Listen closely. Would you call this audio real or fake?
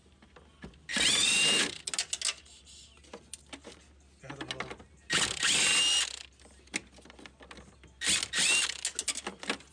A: real